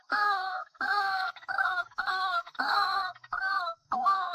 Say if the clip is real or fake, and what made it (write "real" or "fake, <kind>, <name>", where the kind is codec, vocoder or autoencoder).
fake, codec, SNAC